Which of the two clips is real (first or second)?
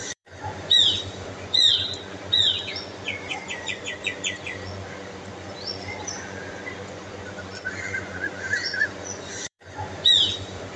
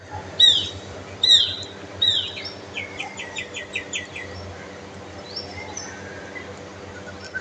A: second